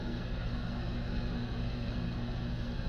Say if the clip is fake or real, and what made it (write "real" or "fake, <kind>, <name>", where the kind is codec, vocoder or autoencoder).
fake, codec, SNAC